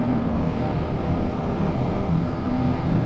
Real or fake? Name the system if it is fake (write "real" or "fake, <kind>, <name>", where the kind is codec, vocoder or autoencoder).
fake, codec, SNAC